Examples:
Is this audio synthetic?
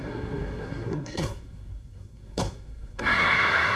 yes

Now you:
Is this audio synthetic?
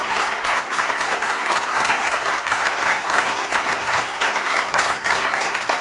yes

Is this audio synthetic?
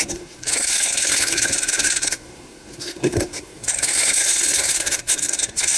yes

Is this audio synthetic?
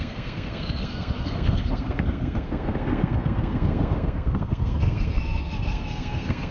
yes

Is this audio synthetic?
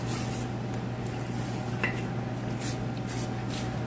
no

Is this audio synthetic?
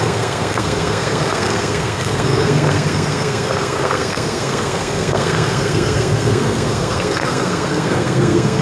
yes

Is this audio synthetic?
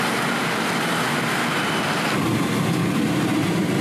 no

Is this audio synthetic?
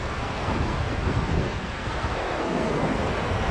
yes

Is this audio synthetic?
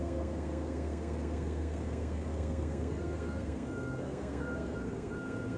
yes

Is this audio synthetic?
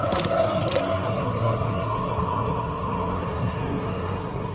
yes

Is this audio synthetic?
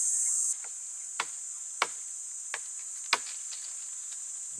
no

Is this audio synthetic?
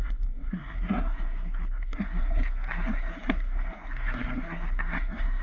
yes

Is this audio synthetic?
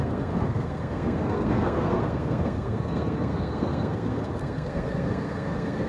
yes